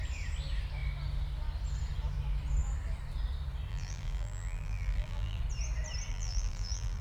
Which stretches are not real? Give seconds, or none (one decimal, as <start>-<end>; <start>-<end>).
3.7-5.4; 6.1-7.0

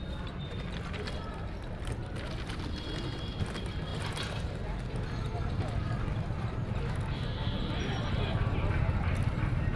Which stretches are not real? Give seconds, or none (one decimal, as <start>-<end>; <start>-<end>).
none

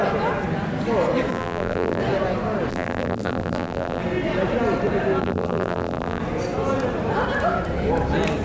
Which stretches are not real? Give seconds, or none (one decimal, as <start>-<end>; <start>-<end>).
1.3-2.0; 2.7-4.0; 5.2-6.2

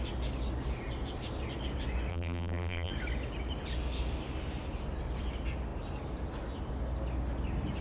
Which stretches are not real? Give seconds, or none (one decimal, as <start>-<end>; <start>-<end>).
2.1-2.9

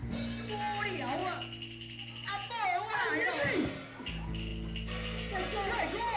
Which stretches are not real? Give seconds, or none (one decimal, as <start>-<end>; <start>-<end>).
none

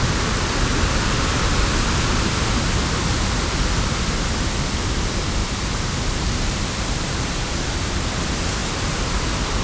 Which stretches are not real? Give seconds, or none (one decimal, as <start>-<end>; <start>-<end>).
5.4-8.2; 8.6-9.2

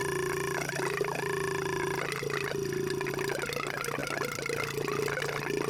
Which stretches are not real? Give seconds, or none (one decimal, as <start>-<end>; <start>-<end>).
none

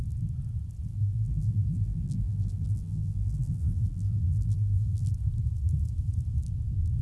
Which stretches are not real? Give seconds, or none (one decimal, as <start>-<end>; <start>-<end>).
0.9-5.1